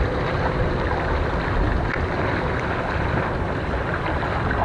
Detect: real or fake real